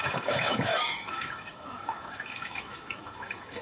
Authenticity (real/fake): fake